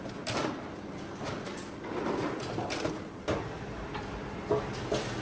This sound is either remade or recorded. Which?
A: recorded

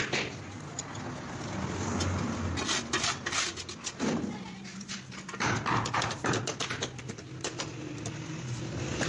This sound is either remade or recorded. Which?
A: recorded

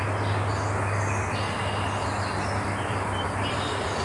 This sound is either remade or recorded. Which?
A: recorded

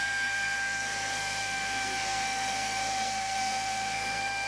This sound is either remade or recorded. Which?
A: remade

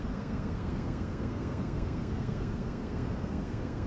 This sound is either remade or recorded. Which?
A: remade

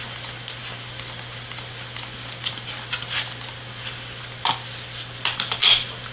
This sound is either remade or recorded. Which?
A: recorded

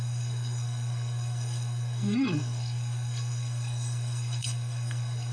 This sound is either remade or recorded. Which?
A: remade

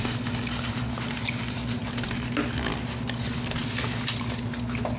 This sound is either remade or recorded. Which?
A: recorded